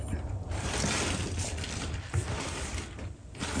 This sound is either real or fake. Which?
fake